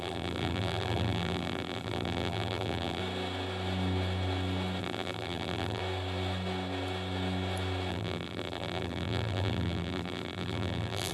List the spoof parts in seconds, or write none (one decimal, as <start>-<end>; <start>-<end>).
0.0-3.0; 4.8-5.8; 7.9-11.1